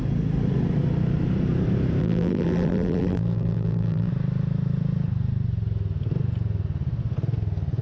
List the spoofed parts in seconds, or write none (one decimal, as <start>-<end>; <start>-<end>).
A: 2.0-4.1